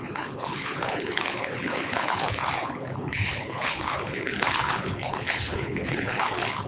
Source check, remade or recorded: remade